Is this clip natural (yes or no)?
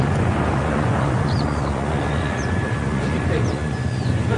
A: no